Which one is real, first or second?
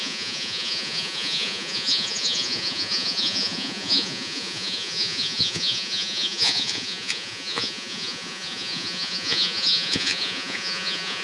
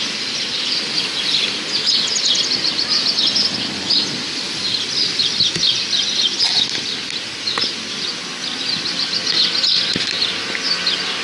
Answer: second